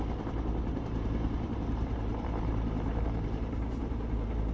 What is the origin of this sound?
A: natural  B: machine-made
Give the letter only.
B